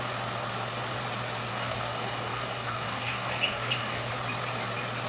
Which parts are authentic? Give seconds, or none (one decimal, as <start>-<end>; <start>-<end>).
0.0-1.5; 4.1-5.1